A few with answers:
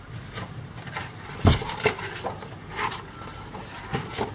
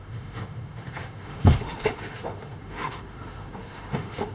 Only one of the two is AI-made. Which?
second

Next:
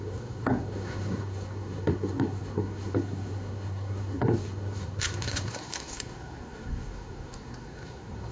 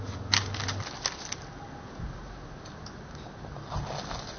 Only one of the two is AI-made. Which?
first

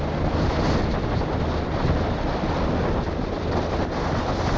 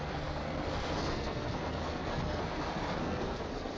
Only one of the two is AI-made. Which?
second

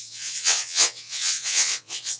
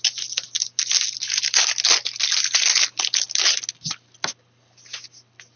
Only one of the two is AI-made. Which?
first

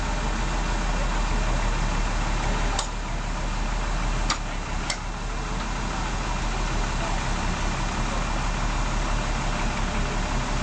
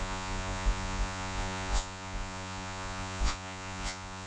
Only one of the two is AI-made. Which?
second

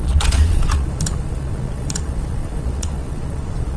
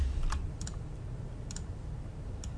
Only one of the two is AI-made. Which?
first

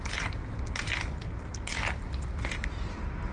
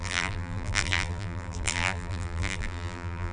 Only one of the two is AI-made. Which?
second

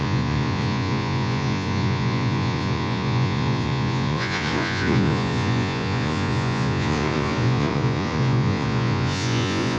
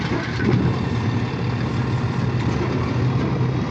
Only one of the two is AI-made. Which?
first